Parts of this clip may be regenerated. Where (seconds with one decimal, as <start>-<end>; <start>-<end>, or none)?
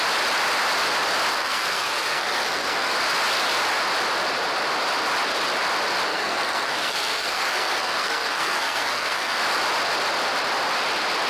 1.3-2.9; 6.1-9.4